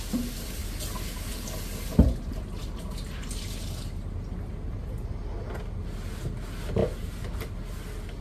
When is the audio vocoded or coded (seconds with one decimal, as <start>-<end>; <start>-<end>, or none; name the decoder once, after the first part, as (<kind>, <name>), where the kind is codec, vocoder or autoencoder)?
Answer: none